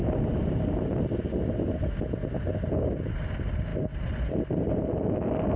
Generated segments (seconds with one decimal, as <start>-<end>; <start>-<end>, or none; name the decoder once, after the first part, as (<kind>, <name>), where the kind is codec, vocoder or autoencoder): none